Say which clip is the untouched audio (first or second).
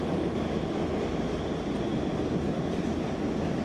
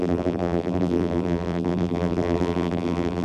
first